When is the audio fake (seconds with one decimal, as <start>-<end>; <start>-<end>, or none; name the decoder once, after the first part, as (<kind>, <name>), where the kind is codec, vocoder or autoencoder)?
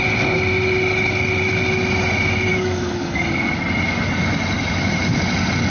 2.5-3.5 (codec, DAC)